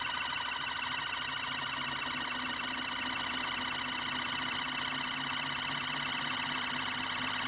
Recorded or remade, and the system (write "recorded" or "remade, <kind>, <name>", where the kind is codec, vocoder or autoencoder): recorded